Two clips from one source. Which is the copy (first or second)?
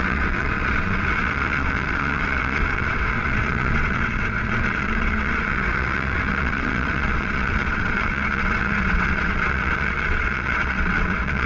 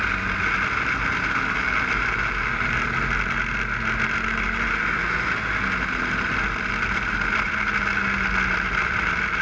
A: first